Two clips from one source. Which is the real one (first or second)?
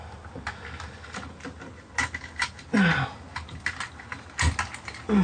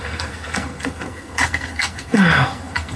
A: first